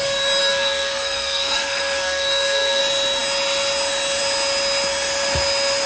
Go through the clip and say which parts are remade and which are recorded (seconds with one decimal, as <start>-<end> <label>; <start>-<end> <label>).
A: 0.0-0.4 recorded; 0.4-2.8 remade; 2.8-5.9 recorded

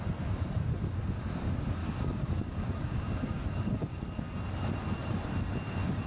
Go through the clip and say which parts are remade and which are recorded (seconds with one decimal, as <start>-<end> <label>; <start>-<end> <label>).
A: 0.0-1.8 recorded; 1.8-4.0 remade; 4.0-6.1 recorded